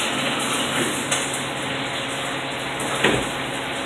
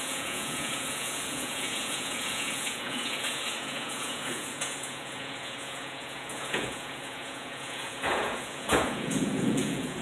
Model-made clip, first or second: second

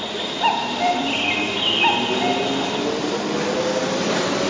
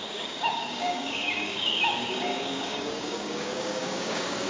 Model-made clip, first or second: second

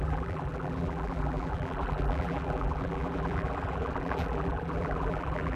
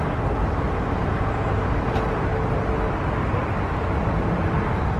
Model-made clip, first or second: first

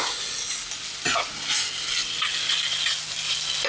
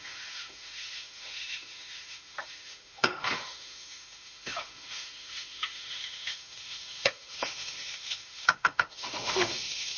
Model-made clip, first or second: second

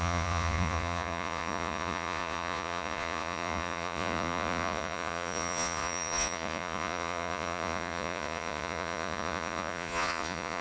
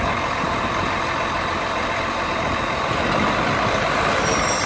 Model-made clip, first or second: first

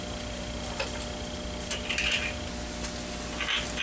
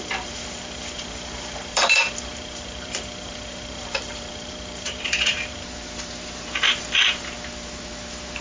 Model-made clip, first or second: second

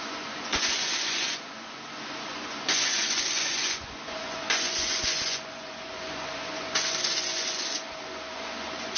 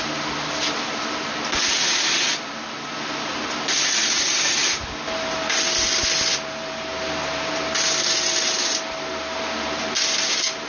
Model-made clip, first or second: first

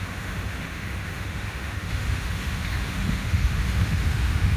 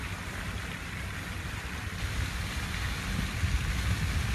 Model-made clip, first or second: first